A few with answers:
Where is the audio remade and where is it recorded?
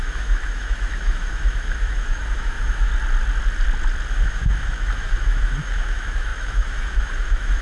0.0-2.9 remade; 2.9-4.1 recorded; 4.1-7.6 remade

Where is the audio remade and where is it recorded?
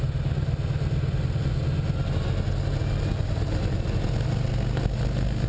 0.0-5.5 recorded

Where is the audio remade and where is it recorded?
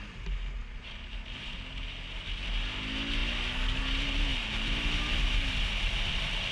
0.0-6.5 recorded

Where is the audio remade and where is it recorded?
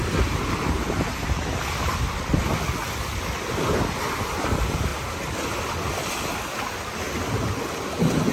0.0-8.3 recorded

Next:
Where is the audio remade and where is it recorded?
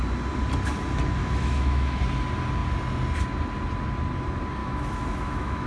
0.0-1.2 recorded; 1.2-2.0 remade; 2.0-4.6 recorded; 4.6-5.7 remade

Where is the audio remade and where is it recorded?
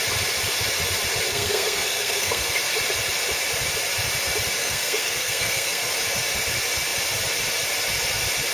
0.0-1.3 recorded; 1.3-2.5 remade; 2.5-4.6 recorded; 4.6-5.9 remade; 5.9-8.5 recorded